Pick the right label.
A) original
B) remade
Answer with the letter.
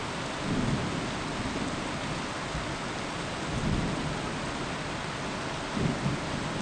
A